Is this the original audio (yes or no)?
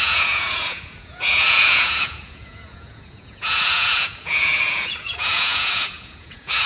no